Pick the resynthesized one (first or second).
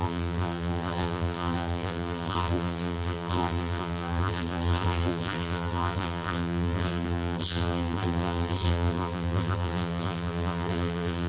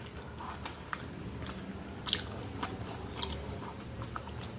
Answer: first